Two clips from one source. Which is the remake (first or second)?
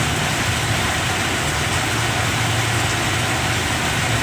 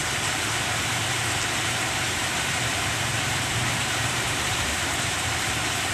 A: second